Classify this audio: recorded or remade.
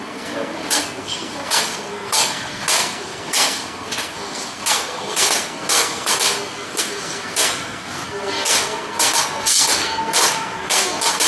remade